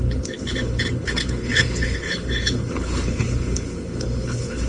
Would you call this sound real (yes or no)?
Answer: no